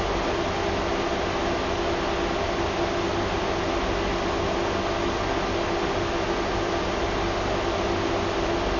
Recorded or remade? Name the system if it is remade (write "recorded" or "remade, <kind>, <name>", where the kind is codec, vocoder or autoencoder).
recorded